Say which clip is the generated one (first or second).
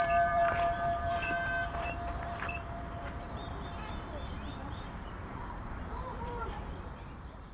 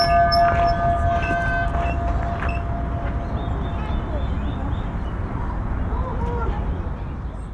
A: first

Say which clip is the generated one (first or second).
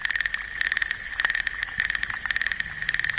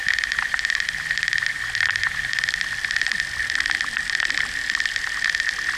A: first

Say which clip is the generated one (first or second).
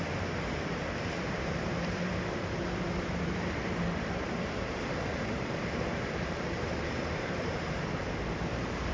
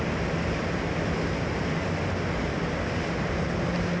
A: first